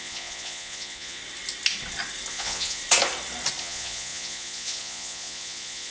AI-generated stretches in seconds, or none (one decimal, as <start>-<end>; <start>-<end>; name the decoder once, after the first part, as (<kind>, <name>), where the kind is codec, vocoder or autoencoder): 0.0-1.2 (vocoder, Vocos); 2.3-2.8; 3.6-5.9